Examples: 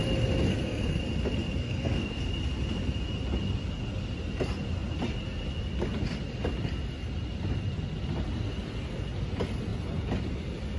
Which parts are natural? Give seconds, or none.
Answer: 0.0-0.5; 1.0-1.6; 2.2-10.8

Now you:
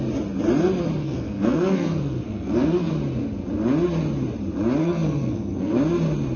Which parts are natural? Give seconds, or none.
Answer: 0.0-1.0; 2.9-4.8; 5.8-6.4